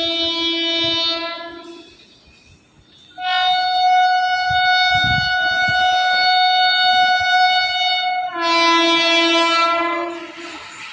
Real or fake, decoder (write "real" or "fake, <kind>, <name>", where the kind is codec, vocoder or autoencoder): real